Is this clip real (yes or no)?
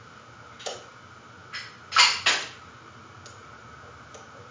yes